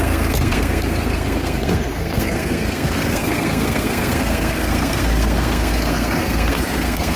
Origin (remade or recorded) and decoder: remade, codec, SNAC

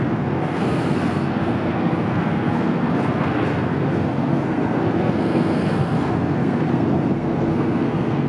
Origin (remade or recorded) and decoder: remade, codec, SNAC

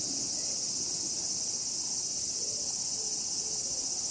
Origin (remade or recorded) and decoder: recorded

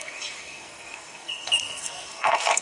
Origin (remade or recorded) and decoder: remade, codec, SNAC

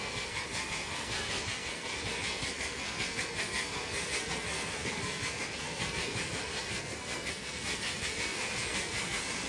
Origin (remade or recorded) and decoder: remade, codec, SNAC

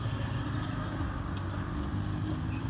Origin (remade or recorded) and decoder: recorded